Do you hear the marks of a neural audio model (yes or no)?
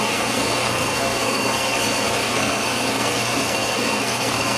yes